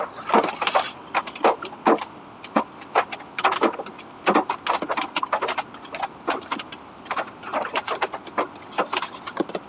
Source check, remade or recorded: recorded